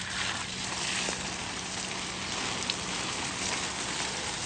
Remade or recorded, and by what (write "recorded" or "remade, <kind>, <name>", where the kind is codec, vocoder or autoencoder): recorded